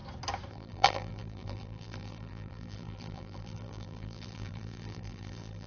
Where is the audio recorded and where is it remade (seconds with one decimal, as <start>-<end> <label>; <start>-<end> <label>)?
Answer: 0.0-0.5 recorded; 0.5-5.7 remade